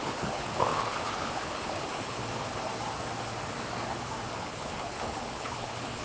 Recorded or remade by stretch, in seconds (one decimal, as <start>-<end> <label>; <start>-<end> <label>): 0.0-2.2 remade; 2.2-4.3 recorded; 4.3-6.0 remade